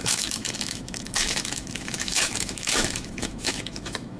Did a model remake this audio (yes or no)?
yes